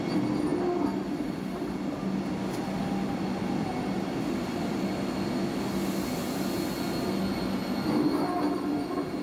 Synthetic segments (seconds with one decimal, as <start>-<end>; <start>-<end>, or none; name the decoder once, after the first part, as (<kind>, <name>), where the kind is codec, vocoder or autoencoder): none